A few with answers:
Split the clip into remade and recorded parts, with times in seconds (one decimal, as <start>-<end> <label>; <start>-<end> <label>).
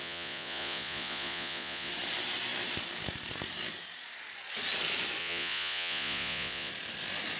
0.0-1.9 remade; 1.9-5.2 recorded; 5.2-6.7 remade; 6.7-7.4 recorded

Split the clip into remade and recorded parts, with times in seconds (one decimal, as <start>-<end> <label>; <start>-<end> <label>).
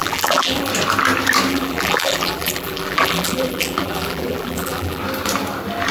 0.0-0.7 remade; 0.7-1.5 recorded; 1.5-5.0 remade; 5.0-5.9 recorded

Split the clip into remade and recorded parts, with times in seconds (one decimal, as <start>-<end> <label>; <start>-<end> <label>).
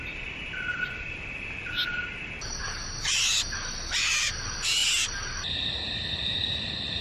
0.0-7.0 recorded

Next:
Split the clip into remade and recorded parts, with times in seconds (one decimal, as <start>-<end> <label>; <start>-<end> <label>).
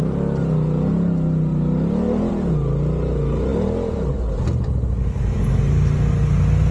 0.0-6.7 recorded